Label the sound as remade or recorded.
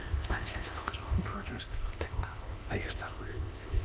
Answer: remade